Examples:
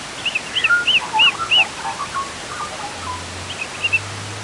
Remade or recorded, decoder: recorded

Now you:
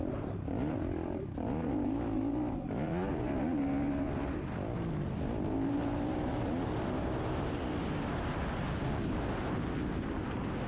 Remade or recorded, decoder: recorded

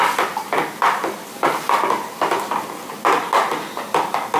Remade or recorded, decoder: recorded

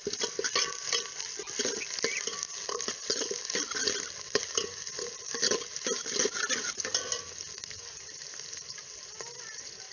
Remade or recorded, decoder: recorded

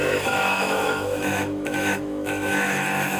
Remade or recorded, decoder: remade, autoencoder, DAC-VAE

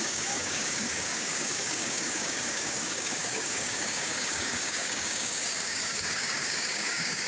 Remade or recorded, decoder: remade, codec, DAC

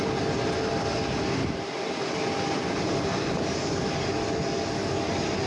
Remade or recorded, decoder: recorded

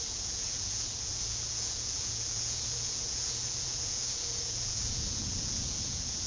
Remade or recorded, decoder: remade, vocoder, Vocos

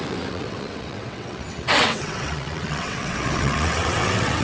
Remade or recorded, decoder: remade, vocoder, WaveNeXt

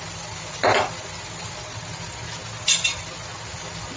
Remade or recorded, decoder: recorded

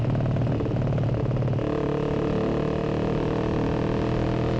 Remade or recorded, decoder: recorded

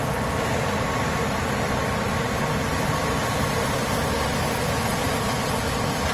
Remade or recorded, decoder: recorded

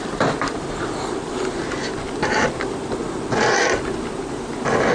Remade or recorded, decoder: recorded